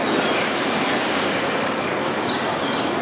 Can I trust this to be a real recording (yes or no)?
yes